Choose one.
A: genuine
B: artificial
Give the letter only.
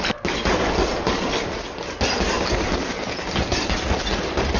A